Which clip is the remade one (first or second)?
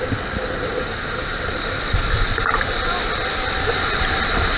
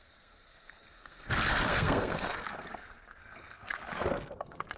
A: second